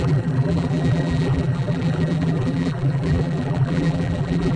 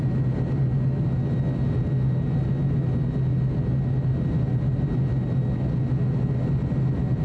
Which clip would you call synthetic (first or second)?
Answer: first